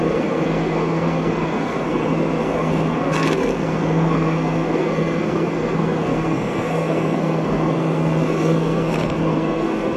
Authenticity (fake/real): fake